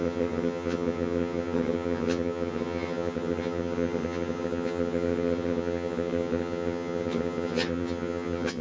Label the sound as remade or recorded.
remade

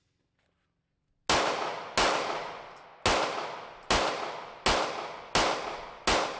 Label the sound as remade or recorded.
recorded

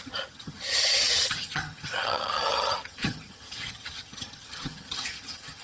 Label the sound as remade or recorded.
remade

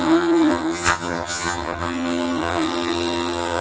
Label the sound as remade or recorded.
remade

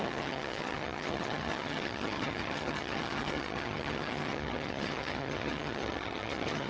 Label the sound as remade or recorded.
remade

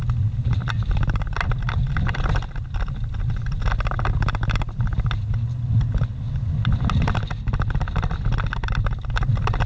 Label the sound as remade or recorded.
recorded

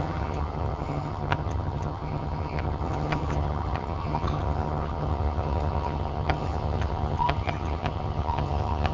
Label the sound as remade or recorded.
remade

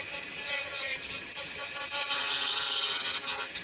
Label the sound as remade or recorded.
remade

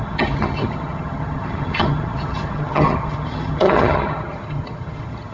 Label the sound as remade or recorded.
remade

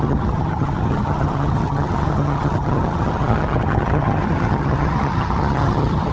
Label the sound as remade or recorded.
remade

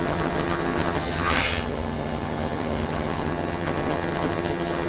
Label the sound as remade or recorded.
remade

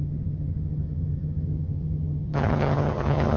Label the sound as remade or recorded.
remade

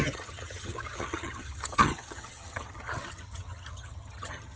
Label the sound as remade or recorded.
remade